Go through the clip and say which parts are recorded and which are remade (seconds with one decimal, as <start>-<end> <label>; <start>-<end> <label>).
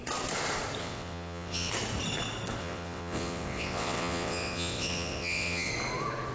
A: 0.0-0.8 recorded; 0.8-1.7 remade; 1.7-2.6 recorded; 2.6-5.7 remade; 5.7-6.3 recorded